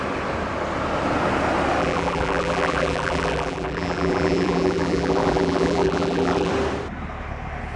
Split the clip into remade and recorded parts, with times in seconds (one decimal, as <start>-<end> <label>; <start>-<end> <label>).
0.0-1.8 recorded; 1.8-6.5 remade; 6.5-7.8 recorded